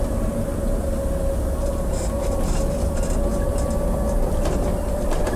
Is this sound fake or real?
real